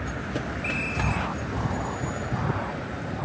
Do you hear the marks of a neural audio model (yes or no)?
no